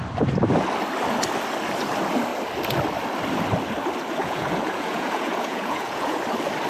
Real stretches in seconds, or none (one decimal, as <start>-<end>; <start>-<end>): 0.0-4.2; 6.2-6.7